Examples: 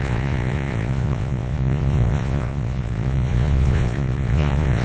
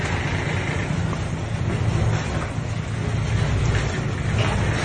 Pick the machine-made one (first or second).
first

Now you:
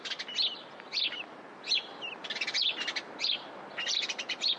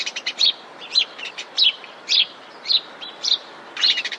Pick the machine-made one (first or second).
second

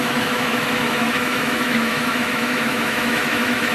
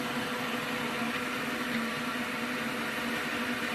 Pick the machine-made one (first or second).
first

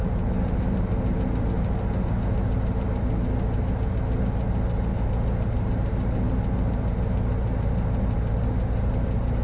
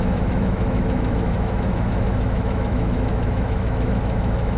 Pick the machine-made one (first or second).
second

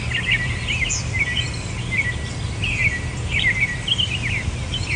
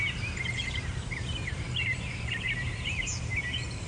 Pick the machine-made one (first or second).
second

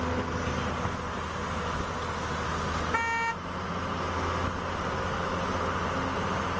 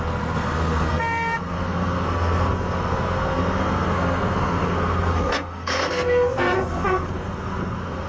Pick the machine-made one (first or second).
second